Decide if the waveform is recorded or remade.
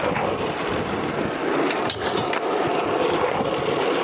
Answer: recorded